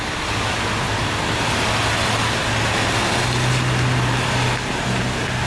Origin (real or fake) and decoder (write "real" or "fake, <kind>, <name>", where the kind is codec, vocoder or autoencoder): real